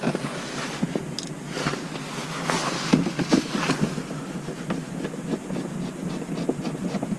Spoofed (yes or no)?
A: no